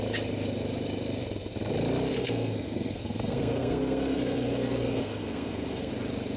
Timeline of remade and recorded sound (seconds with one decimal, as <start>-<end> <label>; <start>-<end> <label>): 0.0-2.1 recorded; 2.1-5.9 remade; 5.9-6.4 recorded